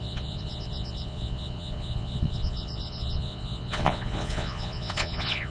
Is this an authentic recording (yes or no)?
no